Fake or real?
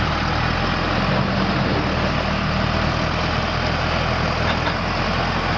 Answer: real